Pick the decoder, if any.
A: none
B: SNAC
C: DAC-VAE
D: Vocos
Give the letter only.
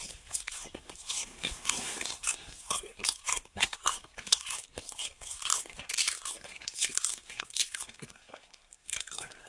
B